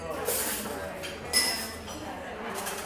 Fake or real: real